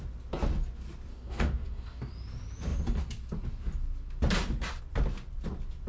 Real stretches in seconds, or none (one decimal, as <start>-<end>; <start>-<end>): 0.0-1.1; 2.0-5.9